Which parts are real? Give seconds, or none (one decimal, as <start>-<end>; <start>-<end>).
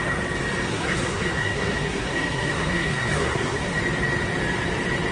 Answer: 0.0-0.7; 3.8-5.1